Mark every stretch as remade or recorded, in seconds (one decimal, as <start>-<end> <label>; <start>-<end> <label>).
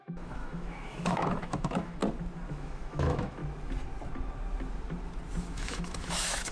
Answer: 0.0-2.0 remade; 2.0-2.5 recorded; 2.5-3.4 remade; 3.4-5.4 recorded; 5.4-6.5 remade